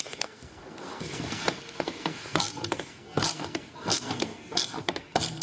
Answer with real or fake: fake